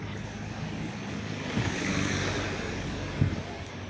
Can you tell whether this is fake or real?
fake